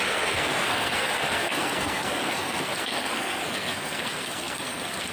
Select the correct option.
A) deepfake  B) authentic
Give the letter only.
A